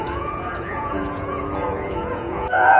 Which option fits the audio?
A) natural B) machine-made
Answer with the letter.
B